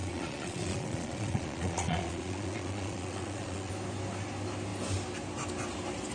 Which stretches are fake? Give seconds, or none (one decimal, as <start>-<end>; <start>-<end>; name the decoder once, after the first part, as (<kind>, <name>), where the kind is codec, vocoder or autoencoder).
0.0-3.7 (vocoder, Vocos)